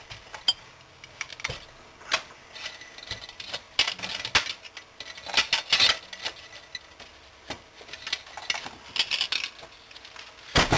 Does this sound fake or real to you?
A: real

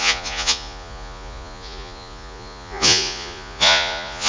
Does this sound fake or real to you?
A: fake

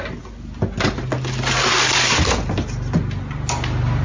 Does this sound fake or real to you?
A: real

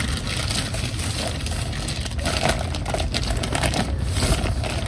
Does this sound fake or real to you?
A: real